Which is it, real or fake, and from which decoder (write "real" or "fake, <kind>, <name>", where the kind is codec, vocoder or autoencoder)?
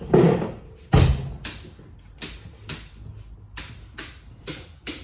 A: real